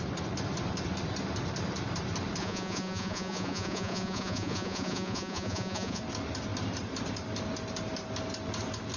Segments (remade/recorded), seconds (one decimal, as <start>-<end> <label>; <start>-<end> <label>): 0.0-2.4 recorded; 2.4-6.0 remade; 6.0-9.0 recorded

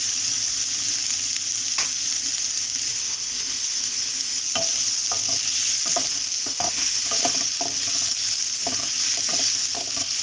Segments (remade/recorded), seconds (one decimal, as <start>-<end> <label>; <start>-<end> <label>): 0.0-2.9 recorded; 2.9-4.4 remade; 4.4-6.4 recorded; 6.4-7.0 remade; 7.0-10.2 recorded

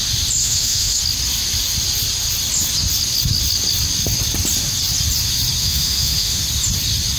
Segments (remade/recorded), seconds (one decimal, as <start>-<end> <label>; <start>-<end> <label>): 0.0-0.4 recorded; 0.4-1.0 remade; 1.0-5.6 recorded; 5.6-6.4 remade; 6.4-7.2 recorded

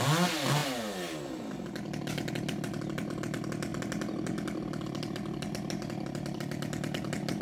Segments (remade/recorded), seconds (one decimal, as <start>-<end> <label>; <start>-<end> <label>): 0.0-7.4 recorded

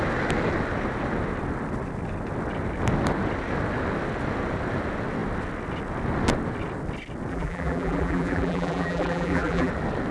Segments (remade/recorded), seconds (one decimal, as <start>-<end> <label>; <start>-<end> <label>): 0.0-7.3 recorded; 7.3-9.7 remade; 9.7-10.1 recorded

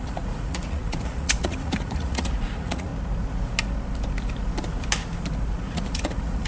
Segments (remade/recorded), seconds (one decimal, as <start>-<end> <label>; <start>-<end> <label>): 0.0-2.9 remade; 2.9-5.5 recorded; 5.5-6.5 remade

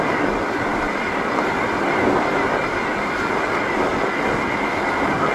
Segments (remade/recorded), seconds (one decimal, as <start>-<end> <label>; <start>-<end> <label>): 0.0-0.7 recorded; 0.7-2.0 remade; 2.0-5.3 recorded